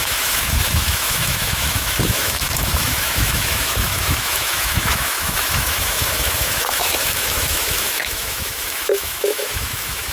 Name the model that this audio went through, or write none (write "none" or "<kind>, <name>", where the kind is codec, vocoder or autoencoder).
autoencoder, DAC-VAE